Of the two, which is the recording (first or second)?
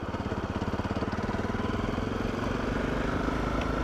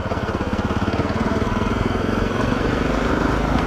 first